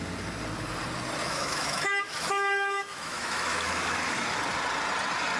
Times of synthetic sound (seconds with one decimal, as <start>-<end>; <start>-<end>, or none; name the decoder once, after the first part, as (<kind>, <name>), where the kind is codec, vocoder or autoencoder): 1.2-4.4 (autoencoder, DAC-VAE)